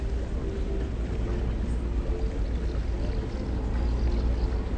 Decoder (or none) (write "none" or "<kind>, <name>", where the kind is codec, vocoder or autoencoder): none